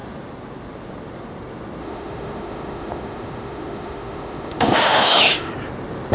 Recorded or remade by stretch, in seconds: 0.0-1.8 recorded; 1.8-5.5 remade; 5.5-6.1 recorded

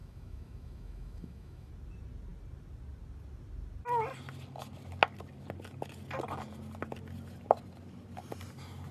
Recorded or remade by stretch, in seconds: 0.0-1.7 remade; 1.7-8.9 recorded

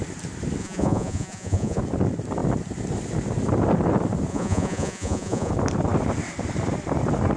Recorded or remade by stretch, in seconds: 0.0-0.6 recorded; 0.6-1.8 remade; 1.8-4.3 recorded; 4.3-5.5 remade; 5.5-7.4 recorded

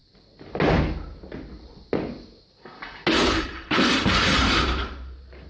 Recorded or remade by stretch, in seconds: 0.0-3.2 recorded; 3.2-3.9 remade; 3.9-5.5 recorded

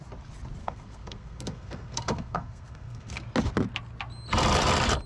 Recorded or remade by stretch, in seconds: 0.0-0.6 recorded; 0.6-3.2 remade; 3.2-5.1 recorded

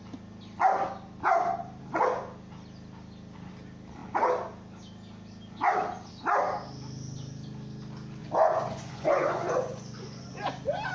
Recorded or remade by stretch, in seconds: 0.0-8.2 recorded; 8.2-10.5 remade; 10.5-10.9 recorded

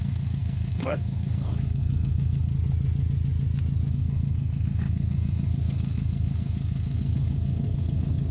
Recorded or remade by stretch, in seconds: 0.0-2.5 remade; 2.5-3.9 recorded; 3.9-8.3 remade